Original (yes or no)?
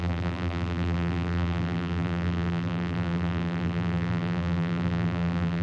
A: no